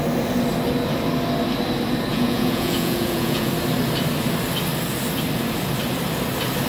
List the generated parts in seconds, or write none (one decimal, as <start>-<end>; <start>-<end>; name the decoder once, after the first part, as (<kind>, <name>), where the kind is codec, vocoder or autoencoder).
2.1-3.5 (vocoder, Vocos)